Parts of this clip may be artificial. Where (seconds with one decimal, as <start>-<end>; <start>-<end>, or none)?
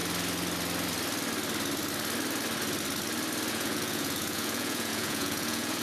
3.5-5.8